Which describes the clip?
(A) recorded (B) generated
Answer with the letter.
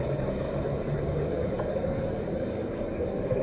B